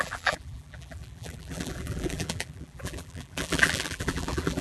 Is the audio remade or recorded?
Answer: remade